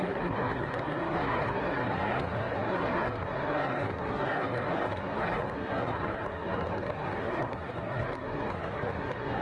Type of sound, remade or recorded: remade